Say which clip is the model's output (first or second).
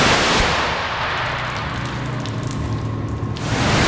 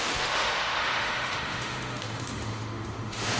second